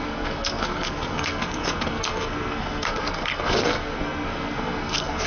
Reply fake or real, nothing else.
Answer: fake